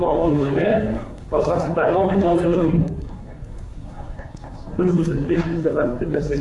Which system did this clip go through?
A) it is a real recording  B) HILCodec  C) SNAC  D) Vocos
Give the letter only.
C